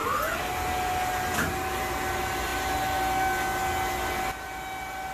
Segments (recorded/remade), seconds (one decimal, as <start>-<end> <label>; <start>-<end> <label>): 0.0-5.1 recorded